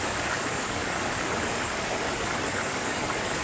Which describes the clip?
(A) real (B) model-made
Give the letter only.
B